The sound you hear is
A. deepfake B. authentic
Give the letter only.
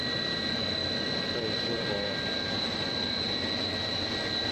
B